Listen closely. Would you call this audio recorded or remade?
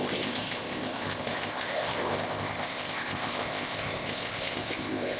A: remade